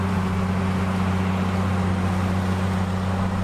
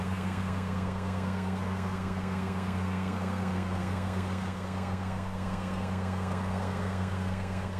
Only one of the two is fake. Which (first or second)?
second